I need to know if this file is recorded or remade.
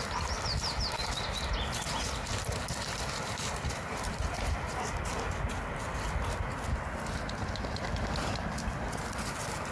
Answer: recorded